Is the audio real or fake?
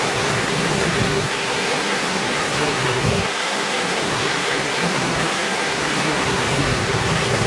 fake